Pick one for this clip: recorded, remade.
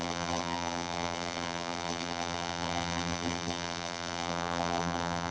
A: remade